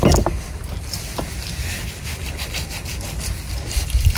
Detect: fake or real fake